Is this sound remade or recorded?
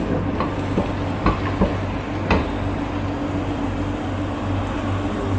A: remade